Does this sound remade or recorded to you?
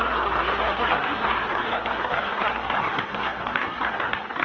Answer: remade